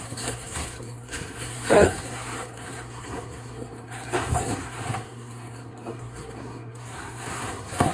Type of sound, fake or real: fake